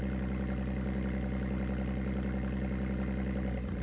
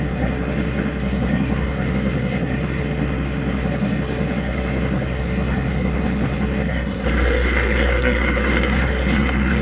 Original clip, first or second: first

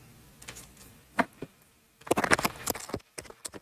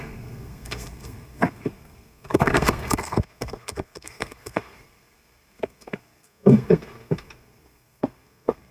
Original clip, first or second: first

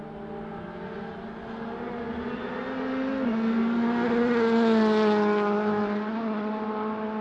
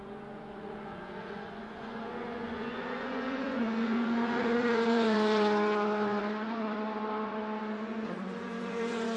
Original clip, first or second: first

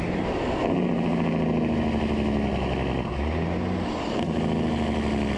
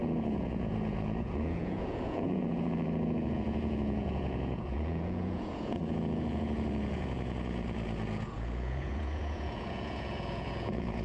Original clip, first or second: first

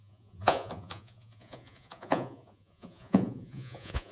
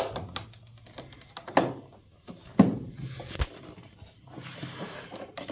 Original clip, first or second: second